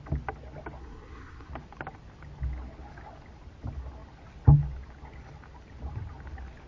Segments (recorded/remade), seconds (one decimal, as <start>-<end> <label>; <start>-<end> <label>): 0.0-0.8 recorded; 0.8-1.5 remade; 1.5-6.7 recorded